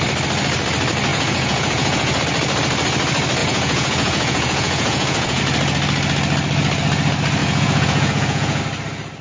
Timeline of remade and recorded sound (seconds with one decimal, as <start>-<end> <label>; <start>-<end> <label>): 0.0-1.1 recorded; 1.1-2.2 remade; 2.2-3.4 recorded; 3.4-5.4 remade; 5.4-7.4 recorded; 7.4-8.6 remade; 8.6-9.2 recorded